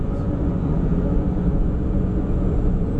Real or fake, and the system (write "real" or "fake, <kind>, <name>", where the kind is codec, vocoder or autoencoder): fake, vocoder, Vocos